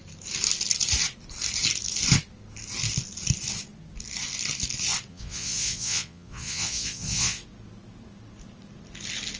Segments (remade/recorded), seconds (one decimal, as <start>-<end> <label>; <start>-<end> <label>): 0.0-5.1 recorded; 5.1-7.4 remade; 7.4-9.4 recorded